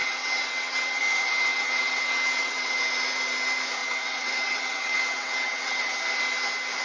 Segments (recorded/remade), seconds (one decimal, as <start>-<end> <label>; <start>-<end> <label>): 0.0-1.0 remade; 1.0-1.5 recorded; 1.5-2.9 remade; 2.9-3.8 recorded; 3.8-5.8 remade; 5.8-6.8 recorded